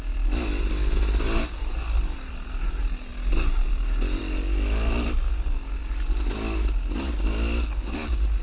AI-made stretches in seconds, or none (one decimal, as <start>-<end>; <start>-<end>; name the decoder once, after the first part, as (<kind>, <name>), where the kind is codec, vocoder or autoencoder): none